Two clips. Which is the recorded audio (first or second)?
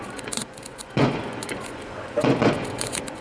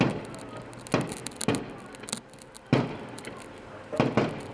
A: second